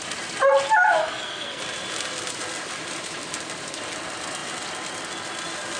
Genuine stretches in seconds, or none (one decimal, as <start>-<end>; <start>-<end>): 0.0-1.0; 1.6-5.8